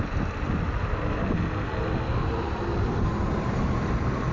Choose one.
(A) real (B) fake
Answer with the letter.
A